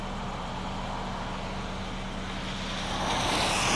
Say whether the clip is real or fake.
real